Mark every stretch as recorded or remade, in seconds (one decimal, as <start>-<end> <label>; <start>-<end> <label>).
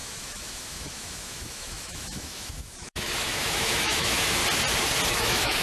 0.0-4.4 remade; 4.4-5.1 recorded; 5.1-5.6 remade